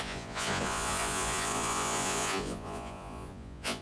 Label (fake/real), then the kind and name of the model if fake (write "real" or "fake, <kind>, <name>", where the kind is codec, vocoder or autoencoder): fake, vocoder, Vocos